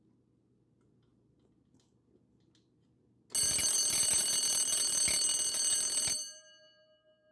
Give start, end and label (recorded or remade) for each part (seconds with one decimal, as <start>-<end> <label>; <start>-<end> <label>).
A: 0.0-7.3 recorded